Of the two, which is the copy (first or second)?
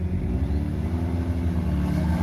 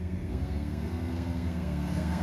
second